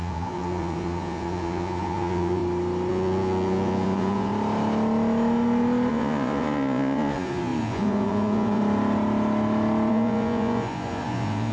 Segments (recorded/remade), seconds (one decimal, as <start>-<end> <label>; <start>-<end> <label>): 0.0-2.4 remade; 2.4-2.9 recorded; 2.9-4.3 remade; 4.3-5.9 recorded; 5.9-8.6 remade; 8.6-9.9 recorded; 9.9-11.5 remade